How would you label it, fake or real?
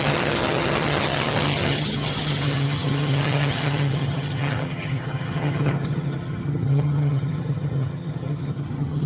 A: fake